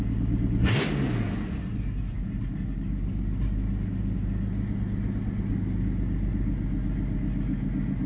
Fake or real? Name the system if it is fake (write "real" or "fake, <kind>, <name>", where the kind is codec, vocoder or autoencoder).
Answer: real